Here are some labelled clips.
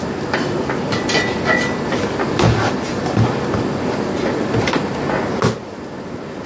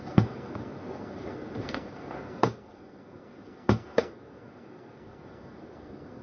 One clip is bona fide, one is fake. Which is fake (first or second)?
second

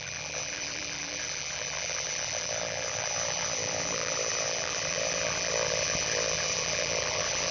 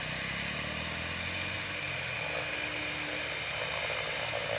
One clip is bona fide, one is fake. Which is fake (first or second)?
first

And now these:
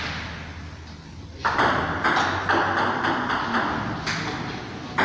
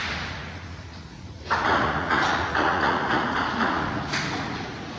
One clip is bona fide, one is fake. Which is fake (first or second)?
second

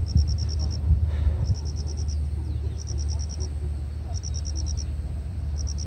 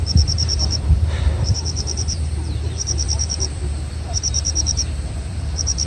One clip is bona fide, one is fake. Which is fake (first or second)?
second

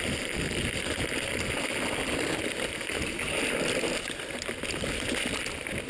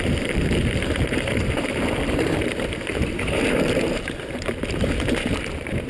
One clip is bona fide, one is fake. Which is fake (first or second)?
second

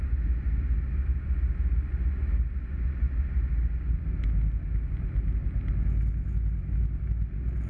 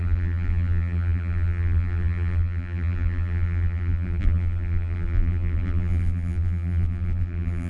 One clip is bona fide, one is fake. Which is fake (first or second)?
second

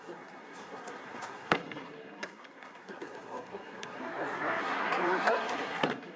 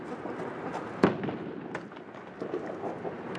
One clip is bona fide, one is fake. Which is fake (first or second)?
first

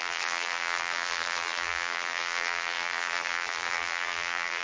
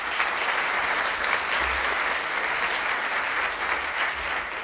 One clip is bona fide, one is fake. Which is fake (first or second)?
first